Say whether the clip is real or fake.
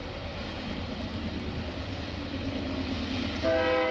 real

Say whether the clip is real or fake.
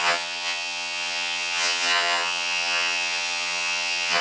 fake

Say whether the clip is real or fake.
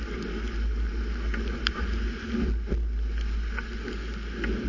real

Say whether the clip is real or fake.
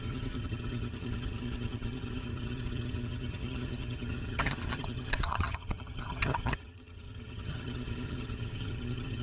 fake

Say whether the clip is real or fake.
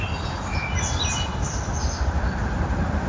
real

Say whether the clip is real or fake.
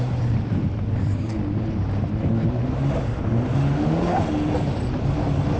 real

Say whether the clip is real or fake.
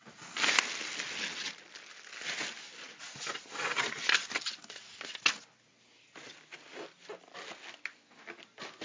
real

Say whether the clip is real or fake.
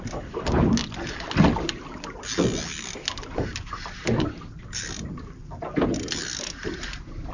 real